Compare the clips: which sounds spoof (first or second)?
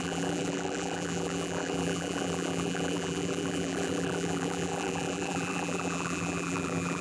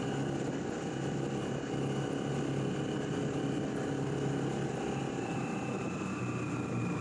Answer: first